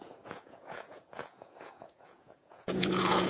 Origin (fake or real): fake